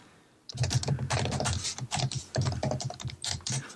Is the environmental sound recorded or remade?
remade